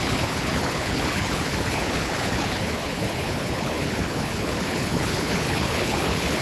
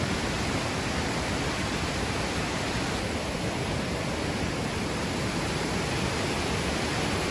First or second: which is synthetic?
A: first